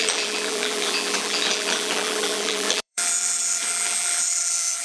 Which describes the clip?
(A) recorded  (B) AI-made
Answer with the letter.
B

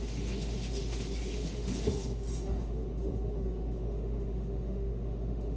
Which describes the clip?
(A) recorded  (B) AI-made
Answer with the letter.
B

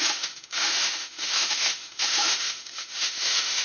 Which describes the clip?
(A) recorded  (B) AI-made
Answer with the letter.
B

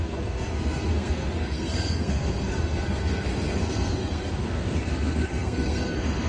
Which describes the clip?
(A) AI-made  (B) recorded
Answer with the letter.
A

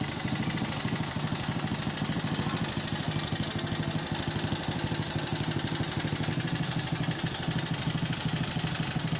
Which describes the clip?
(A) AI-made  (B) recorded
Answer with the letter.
B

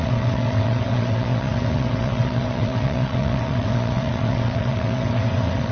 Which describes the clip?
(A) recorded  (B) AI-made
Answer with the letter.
B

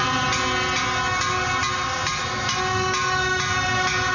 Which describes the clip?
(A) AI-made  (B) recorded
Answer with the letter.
B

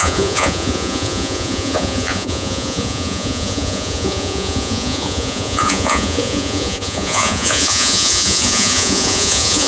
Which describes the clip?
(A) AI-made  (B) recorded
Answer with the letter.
A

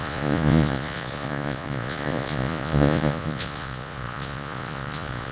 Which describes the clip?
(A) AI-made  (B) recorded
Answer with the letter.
A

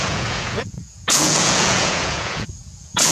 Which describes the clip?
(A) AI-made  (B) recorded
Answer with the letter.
A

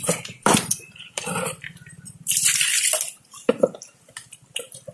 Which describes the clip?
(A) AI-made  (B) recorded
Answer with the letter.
A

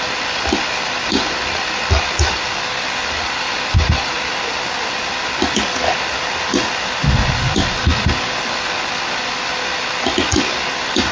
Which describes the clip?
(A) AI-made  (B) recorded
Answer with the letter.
B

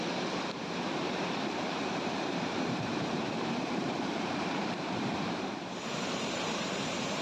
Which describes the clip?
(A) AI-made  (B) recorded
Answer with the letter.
A